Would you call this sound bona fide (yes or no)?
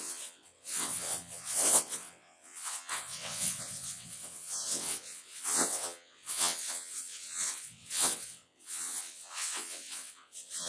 no